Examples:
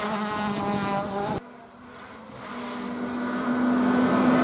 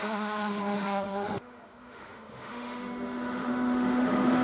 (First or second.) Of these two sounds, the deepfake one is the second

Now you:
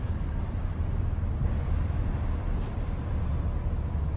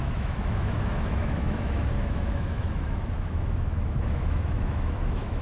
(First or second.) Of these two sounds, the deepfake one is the second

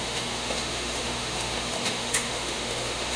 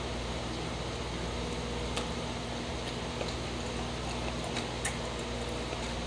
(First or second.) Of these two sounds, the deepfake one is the first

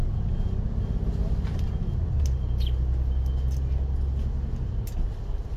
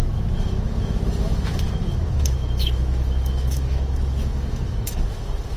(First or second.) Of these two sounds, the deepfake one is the second